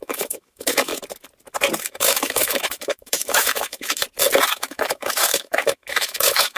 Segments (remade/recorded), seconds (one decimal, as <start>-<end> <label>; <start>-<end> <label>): 0.0-0.9 remade; 0.9-1.8 recorded; 1.8-4.0 remade; 4.0-4.5 recorded; 4.5-6.6 remade